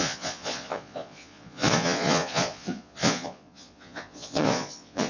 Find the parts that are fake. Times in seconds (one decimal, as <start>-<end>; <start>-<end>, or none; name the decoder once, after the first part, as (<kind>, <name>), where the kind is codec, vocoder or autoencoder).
0.0-5.1 (vocoder, Vocos)